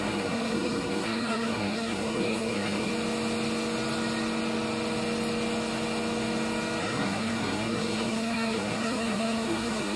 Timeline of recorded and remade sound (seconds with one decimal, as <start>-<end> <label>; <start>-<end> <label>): 0.0-2.9 remade; 2.9-6.8 recorded; 6.8-10.0 remade